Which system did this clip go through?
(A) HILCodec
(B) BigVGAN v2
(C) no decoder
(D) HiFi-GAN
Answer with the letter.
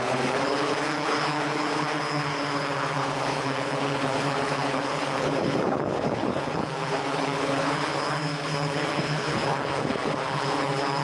A